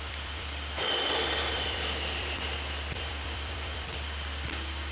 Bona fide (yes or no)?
no